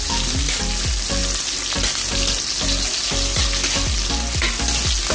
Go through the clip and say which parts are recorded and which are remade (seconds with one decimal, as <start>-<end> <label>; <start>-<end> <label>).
0.0-5.1 recorded